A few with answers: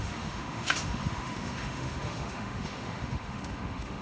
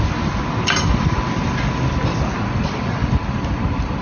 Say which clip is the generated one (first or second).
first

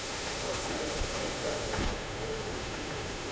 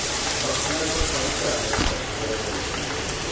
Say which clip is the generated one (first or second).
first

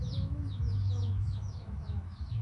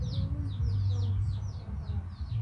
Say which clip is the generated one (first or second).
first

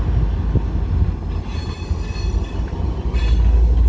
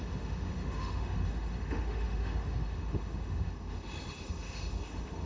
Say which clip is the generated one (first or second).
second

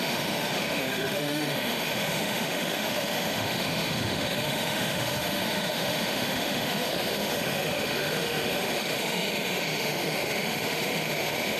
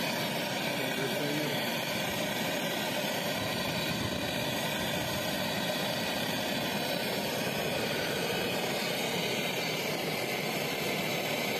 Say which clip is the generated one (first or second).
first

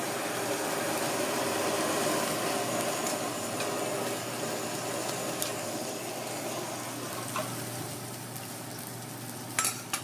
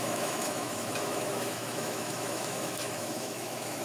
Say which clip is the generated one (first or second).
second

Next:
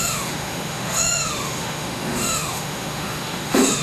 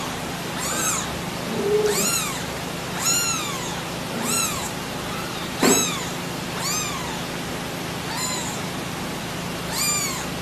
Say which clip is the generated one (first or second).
first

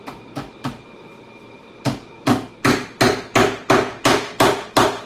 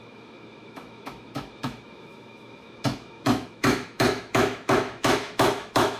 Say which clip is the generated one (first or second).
second